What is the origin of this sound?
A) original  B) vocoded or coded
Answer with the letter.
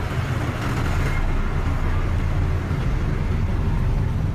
A